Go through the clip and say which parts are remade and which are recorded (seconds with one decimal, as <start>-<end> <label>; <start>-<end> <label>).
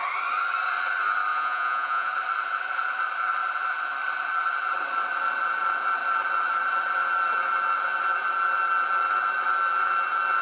0.0-1.3 recorded; 1.3-2.1 remade; 2.1-10.4 recorded